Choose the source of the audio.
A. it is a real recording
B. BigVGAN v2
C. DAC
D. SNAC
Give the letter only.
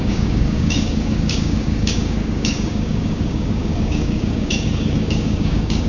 C